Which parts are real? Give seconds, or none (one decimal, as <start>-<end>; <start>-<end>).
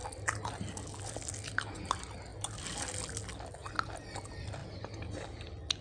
0.0-5.8